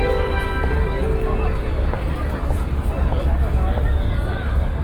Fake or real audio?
fake